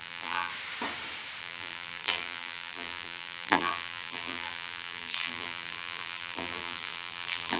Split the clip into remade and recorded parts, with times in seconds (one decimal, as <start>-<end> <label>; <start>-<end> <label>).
0.0-0.5 remade; 0.5-1.4 recorded; 1.4-7.6 remade

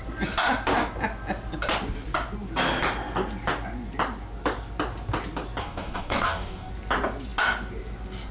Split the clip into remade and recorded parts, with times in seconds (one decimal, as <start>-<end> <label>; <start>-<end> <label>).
0.0-5.6 recorded; 5.6-6.7 remade; 6.7-8.3 recorded

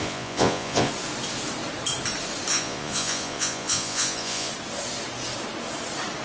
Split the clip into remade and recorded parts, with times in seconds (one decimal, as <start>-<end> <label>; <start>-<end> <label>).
0.0-0.9 remade; 0.9-2.5 recorded; 2.5-4.5 remade; 4.5-6.2 recorded

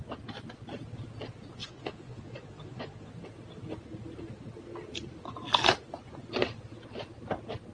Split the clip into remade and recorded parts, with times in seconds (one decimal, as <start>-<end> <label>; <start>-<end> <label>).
0.0-1.6 recorded; 1.6-3.1 remade; 3.1-7.7 recorded